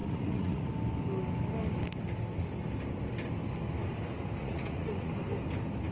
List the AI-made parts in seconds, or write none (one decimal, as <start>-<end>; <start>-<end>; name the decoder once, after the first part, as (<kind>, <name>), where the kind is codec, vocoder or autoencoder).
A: 0.0-0.7 (vocoder, Vocos); 4.4-5.1